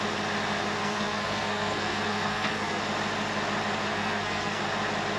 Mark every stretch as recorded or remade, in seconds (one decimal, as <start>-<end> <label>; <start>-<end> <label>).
0.0-0.8 recorded; 0.8-2.8 remade; 2.8-3.9 recorded; 3.9-4.6 remade; 4.6-5.2 recorded